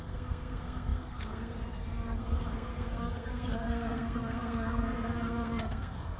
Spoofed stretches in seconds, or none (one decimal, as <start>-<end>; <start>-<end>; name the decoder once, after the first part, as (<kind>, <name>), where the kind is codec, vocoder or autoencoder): 0.0-6.2 (codec, SNAC)